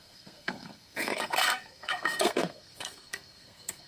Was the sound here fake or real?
fake